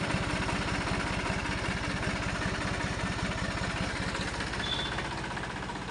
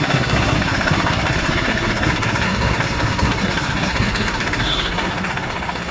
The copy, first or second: second